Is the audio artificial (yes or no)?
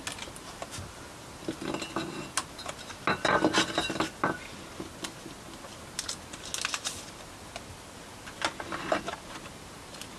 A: no